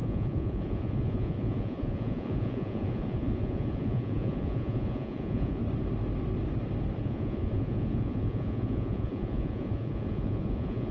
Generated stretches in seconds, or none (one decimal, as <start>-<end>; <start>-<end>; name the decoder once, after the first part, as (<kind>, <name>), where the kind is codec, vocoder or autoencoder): 0.0-5.6 (vocoder, Vocos); 7.0-10.9